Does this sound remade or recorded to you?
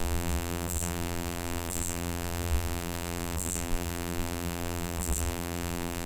remade